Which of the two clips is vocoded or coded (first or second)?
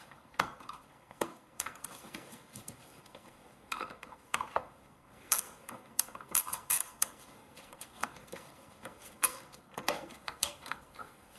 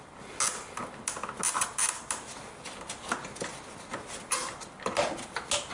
first